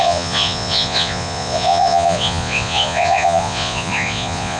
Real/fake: fake